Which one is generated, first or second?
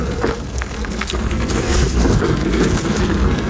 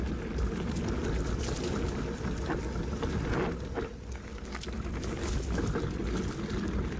first